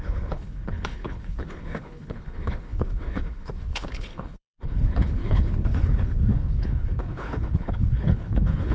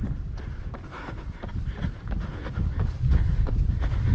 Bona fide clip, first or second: second